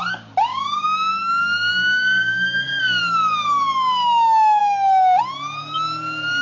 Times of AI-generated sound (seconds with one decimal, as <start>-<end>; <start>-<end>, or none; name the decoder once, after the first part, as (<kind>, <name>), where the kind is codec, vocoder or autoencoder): 0.5-2.8 (codec, DAC)